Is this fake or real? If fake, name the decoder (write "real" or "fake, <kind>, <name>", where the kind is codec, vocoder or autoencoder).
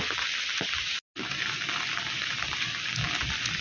real